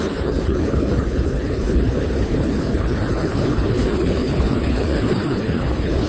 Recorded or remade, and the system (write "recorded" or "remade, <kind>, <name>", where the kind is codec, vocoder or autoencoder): remade, codec, HILCodec